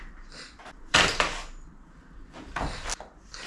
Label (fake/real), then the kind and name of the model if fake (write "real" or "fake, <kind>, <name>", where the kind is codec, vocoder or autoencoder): fake, vocoder, BigVGAN v2